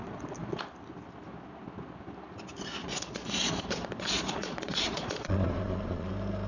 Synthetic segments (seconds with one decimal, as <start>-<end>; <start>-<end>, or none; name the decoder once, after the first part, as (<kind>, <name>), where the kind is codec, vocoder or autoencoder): 0.0-0.6 (vocoder, Vocos); 2.8-6.1